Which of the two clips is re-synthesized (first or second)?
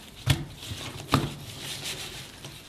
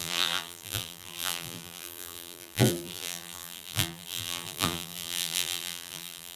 second